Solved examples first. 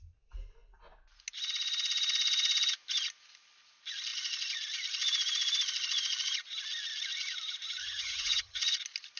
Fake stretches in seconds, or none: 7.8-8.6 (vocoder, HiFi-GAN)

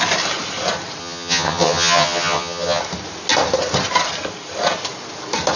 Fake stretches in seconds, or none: 1.0-2.8 (vocoder, HiFi-GAN)

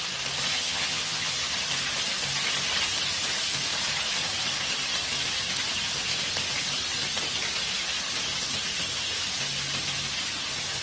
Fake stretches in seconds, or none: 0.5-1.3 (vocoder, HiFi-GAN)